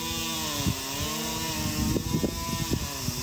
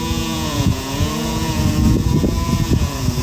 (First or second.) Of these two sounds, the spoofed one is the second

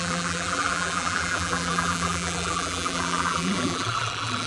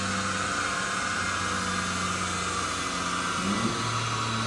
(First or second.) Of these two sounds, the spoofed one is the first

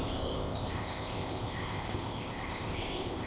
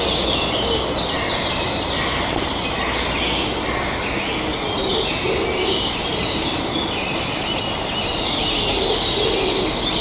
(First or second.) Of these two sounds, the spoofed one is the first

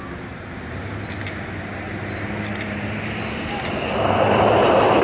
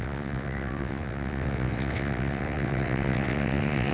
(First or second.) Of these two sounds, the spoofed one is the second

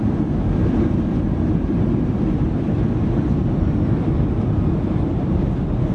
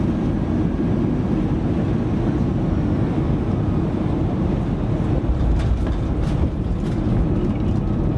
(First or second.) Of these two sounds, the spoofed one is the first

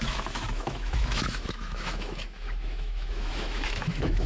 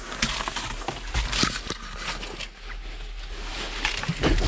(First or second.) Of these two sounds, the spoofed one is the first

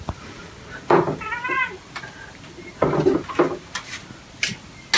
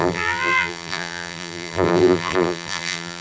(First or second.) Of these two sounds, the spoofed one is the second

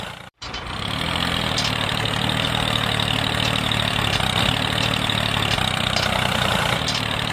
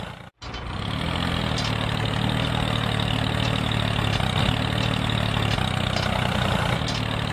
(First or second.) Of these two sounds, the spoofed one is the first